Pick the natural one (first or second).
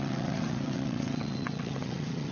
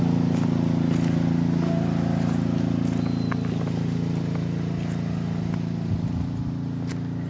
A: second